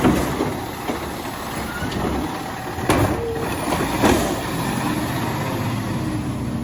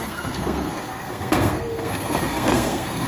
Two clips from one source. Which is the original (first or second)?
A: first